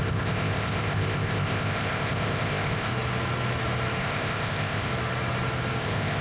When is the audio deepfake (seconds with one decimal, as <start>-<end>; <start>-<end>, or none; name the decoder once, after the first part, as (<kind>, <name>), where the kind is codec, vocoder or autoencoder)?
0.0-2.9 (codec, ZipCodec); 4.0-4.9; 5.8-6.2